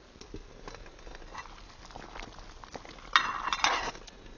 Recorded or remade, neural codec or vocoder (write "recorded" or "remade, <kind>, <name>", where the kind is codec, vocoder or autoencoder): recorded